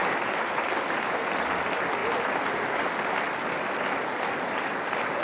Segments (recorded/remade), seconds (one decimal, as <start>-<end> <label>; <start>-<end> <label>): 0.0-5.2 recorded

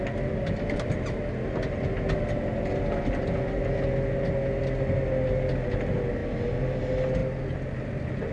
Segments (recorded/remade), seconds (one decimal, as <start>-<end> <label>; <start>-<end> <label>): 0.0-8.3 recorded

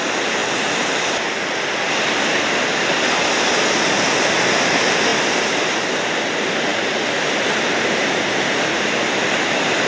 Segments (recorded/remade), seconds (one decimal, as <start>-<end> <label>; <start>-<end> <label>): 0.0-9.9 recorded

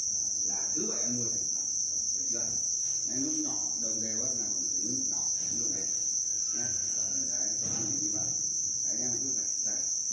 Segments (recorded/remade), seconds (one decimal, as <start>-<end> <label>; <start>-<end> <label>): 0.0-10.1 recorded

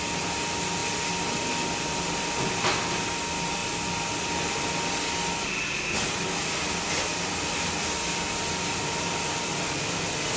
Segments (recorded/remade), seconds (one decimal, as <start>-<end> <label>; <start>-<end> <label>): 0.0-10.4 recorded